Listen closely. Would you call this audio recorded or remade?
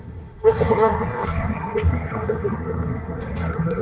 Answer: remade